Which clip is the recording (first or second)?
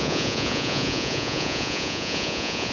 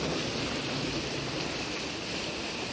second